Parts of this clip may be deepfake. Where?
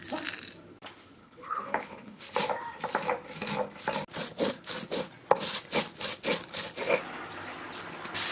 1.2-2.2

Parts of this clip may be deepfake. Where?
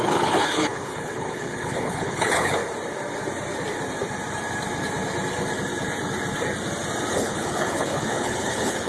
0.0-2.6; 7.1-8.9